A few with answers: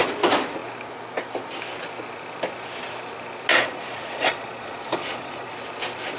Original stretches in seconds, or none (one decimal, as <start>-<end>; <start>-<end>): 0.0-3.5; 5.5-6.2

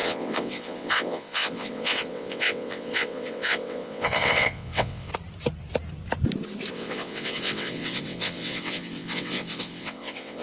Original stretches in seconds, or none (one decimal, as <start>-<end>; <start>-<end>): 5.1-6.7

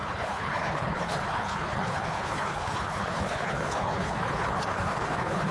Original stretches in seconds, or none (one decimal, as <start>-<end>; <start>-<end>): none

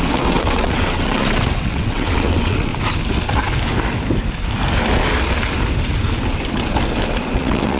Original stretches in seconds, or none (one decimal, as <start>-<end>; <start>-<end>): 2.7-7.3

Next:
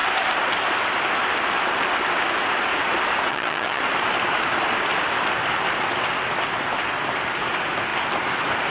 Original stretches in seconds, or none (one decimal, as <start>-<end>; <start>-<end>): 0.0-3.3; 3.8-8.7

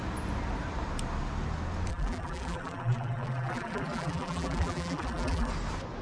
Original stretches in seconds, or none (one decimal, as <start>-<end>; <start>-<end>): 0.0-1.9; 5.5-6.0

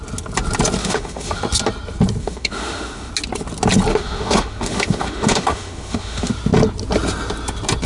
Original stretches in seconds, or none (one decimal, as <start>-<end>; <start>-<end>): 0.0-0.8; 1.4-2.2; 3.1-3.9; 6.3-7.9